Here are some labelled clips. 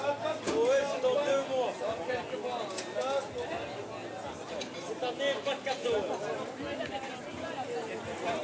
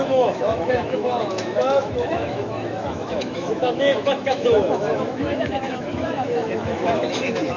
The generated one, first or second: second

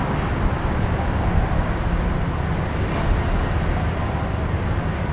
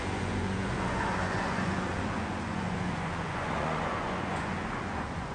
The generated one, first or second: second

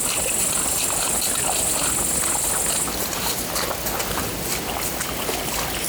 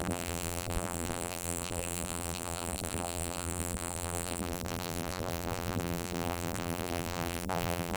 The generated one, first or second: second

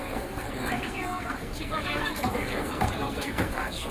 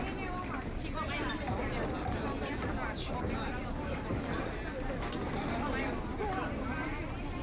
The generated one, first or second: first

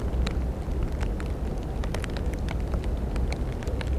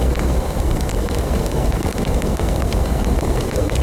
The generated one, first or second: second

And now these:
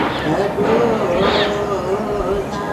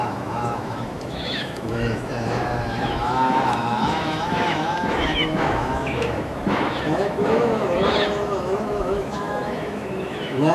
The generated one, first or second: second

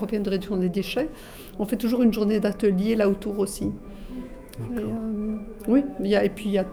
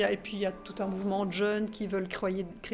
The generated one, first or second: first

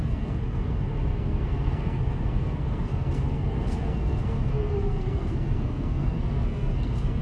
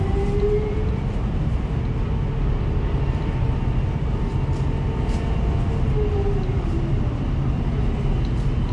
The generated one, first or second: first